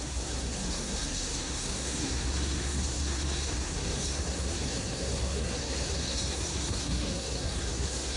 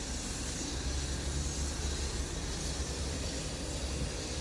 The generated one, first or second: first